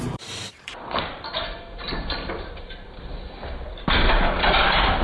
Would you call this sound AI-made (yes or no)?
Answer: yes